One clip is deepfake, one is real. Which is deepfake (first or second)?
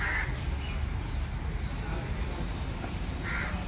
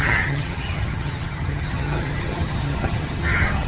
second